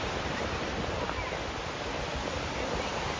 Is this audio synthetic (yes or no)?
no